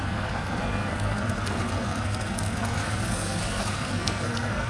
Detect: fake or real fake